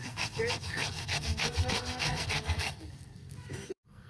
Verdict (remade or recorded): remade